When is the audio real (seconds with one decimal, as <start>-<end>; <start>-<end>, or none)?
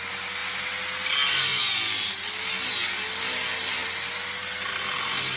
0.0-5.4